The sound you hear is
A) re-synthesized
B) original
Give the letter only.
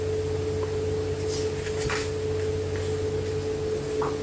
B